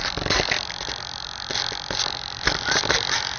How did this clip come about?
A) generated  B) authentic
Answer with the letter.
B